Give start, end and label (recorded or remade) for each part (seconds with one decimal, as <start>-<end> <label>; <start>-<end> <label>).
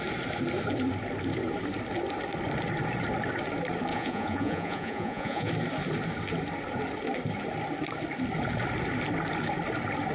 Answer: 0.0-3.9 recorded; 3.9-5.5 remade; 5.5-10.1 recorded